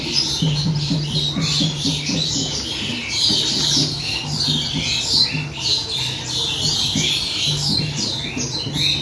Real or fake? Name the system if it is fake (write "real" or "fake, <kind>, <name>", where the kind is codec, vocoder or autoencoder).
real